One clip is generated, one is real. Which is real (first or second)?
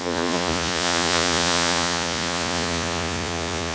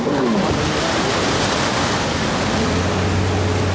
second